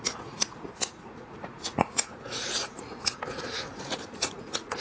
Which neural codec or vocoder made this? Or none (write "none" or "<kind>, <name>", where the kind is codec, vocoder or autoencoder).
vocoder, Vocos